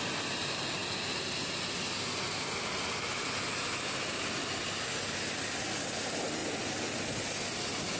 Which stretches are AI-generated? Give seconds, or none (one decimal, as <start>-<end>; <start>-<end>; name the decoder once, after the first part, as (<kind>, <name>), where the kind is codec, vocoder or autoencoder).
none